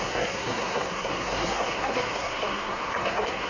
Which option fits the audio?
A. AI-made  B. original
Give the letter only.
A